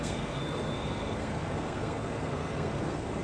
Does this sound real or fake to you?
fake